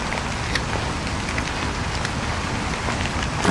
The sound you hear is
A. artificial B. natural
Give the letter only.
B